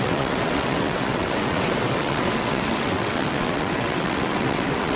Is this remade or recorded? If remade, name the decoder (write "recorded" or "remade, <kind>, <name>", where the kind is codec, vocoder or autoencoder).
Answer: remade, vocoder, WaveNeXt